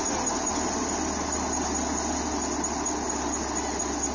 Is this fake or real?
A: real